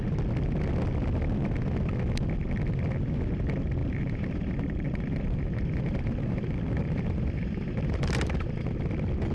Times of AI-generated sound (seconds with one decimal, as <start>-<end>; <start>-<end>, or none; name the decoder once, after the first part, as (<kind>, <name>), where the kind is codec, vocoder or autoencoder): 3.8-8.7 (vocoder, BigVGAN v2)